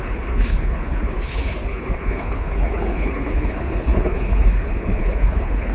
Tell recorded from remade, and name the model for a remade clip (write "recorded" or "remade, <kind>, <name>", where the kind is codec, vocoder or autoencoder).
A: remade, codec, HILCodec